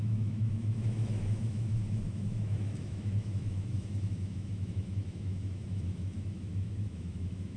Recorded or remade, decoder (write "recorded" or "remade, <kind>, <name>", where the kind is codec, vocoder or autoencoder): remade, autoencoder, DAC-VAE